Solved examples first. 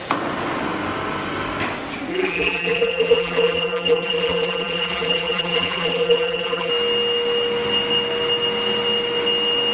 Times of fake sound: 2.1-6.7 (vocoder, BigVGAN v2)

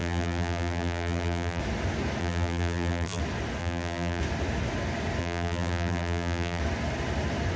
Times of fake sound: 0.0-1.6 (vocoder, BigVGAN v2); 2.2-3.2; 3.6-4.2; 5.2-6.6

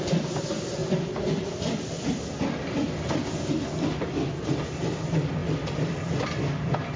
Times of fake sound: none

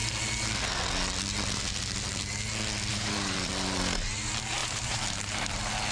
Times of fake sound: 2.9-3.5 (vocoder, BigVGAN v2); 4.6-5.5